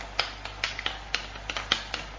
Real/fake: real